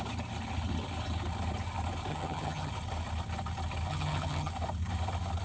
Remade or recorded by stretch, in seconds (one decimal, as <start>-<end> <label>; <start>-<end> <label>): 0.0-2.1 recorded; 2.1-2.7 remade; 2.7-3.9 recorded; 3.9-4.5 remade; 4.5-5.4 recorded